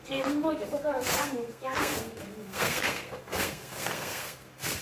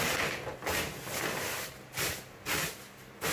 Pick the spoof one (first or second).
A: first